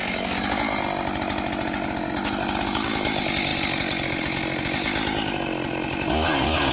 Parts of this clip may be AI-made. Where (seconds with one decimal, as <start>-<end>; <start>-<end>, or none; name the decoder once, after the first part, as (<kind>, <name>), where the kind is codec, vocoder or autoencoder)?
none